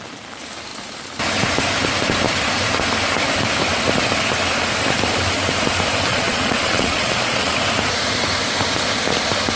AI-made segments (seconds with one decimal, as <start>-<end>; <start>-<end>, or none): 6.1-7.5